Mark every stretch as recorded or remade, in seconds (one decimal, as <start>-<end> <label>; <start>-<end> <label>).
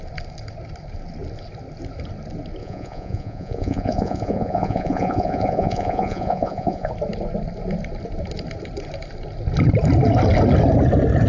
0.0-2.6 recorded; 2.6-6.9 remade; 6.9-11.3 recorded